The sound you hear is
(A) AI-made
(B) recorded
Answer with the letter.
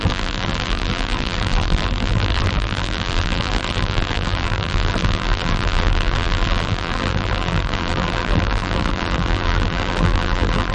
A